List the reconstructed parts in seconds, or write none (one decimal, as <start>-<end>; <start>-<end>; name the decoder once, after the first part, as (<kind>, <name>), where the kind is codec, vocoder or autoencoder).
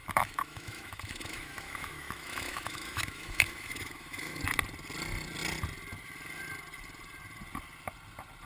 0.0-4.4 (autoencoder, DAC-VAE)